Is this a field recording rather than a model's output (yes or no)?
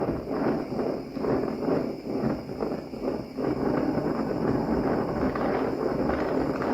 yes